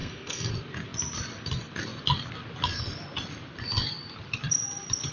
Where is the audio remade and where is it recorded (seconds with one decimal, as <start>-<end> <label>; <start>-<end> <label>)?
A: 0.0-0.5 remade; 0.5-5.1 recorded